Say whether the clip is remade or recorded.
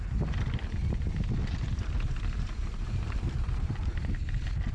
recorded